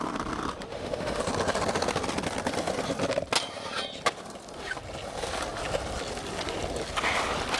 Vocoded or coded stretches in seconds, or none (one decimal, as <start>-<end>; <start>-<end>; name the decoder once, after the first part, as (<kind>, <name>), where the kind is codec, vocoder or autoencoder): 0.7-1.2 (autoencoder, DAC-VAE)